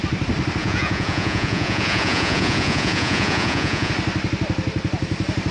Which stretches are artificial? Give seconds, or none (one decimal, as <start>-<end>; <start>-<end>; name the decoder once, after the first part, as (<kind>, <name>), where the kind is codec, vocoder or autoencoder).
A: 0.6-3.9 (vocoder, Vocos)